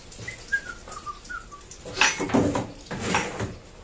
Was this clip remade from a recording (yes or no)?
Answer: no